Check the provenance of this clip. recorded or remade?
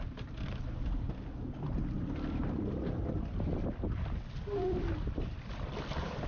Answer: recorded